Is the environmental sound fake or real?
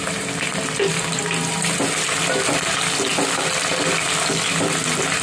real